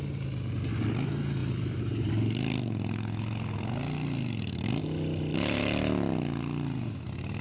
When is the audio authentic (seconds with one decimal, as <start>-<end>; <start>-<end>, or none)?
0.0-1.4; 2.1-7.4